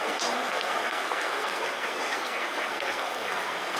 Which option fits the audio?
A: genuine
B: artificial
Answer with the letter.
B